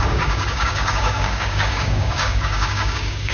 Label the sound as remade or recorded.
remade